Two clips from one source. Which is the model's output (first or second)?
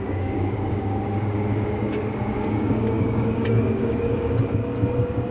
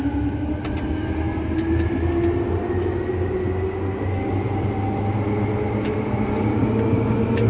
first